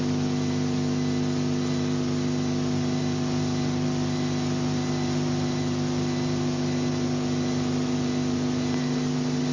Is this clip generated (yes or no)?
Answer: no